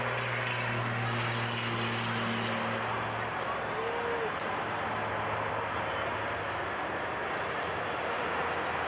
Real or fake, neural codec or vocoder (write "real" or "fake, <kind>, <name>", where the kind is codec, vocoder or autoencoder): real